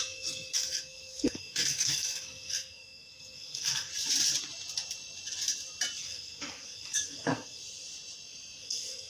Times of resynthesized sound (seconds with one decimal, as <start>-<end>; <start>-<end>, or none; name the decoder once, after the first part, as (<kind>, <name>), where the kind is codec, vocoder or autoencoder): 0.0-3.9 (codec, SNAC); 6.0-7.6; 8.6-9.1